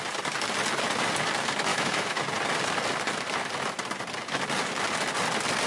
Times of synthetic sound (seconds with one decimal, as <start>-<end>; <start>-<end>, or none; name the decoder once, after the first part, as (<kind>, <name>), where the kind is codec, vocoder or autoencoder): 1.7-2.2 (autoencoder, DAC-VAE)